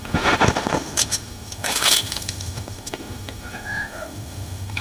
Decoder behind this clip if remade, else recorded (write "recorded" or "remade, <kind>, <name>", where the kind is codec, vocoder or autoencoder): remade, autoencoder, DAC-VAE